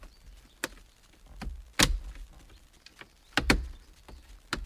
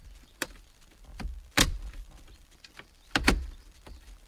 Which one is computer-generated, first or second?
second